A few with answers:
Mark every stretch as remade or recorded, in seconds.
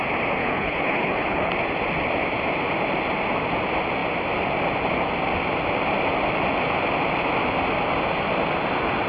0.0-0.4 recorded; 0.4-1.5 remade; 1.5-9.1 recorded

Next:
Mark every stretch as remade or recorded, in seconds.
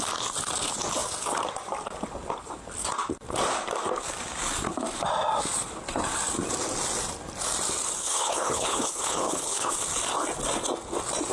0.0-8.0 recorded; 8.0-9.7 remade; 9.7-11.3 recorded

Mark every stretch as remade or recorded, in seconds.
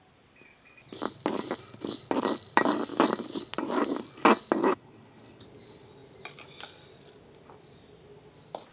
0.0-4.6 recorded; 4.6-5.4 remade; 5.4-8.7 recorded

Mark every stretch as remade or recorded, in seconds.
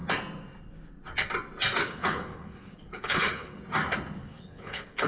0.0-1.8 recorded; 1.8-3.6 remade; 3.6-4.2 recorded; 4.2-5.1 remade